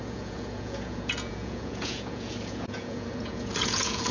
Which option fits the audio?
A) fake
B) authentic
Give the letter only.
A